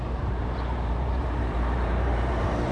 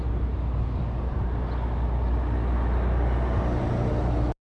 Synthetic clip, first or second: first